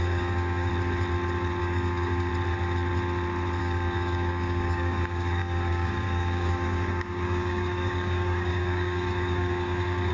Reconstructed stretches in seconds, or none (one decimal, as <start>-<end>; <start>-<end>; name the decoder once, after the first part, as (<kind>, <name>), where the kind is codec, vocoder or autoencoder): 0.0-0.7 (codec, DAC); 1.6-2.3; 3.6-10.1

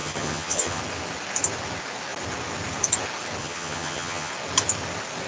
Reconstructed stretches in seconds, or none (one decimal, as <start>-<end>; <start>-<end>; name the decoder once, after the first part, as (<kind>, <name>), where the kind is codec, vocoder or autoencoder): 0.0-0.8 (vocoder, HiFi-GAN); 3.4-4.3